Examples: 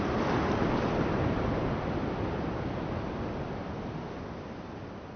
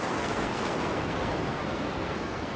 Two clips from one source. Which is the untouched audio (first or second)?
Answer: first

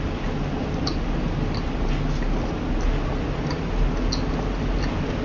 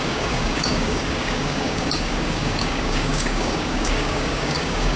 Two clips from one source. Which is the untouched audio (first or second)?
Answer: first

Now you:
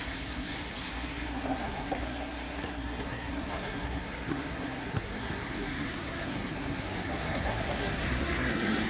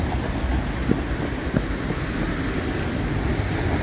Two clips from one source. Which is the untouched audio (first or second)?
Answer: second